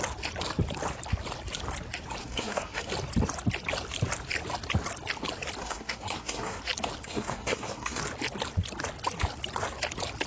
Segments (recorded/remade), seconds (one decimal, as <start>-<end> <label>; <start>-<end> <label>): 0.0-2.2 recorded; 2.2-2.9 remade; 2.9-5.6 recorded; 5.6-6.6 remade; 6.6-7.0 recorded; 7.0-8.0 remade; 8.0-10.3 recorded